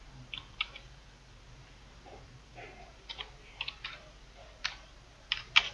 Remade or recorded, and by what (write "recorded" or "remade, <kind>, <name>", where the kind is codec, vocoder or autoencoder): remade, vocoder, BigVGAN v2